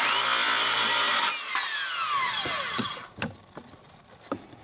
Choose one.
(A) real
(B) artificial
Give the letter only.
A